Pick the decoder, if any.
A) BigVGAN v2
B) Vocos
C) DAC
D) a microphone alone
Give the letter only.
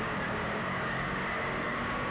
C